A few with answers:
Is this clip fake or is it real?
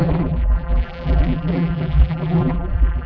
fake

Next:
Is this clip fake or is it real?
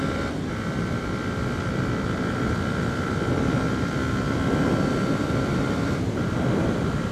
fake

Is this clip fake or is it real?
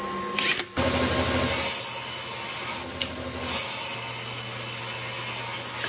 real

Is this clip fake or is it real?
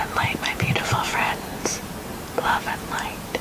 fake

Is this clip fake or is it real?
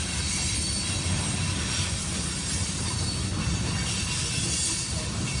real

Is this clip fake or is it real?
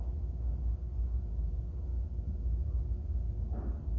real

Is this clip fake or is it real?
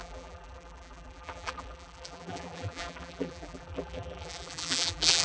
fake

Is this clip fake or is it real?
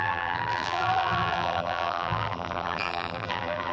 fake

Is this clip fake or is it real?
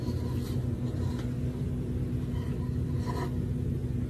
real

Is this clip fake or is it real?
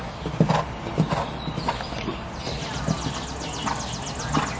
real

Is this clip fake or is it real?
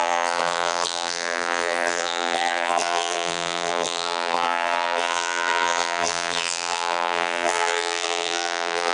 fake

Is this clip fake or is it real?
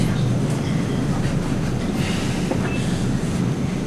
real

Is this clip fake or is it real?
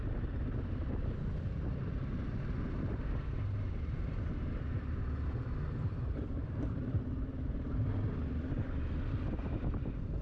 real